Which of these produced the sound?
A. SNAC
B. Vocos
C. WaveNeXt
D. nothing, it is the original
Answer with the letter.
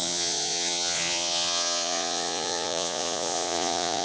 B